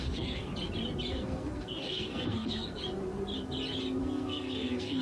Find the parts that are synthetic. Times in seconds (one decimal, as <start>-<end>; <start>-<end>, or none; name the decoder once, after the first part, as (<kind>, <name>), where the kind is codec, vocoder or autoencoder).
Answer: 0.0-0.5 (codec, SNAC); 1.1-2.8; 4.0-5.0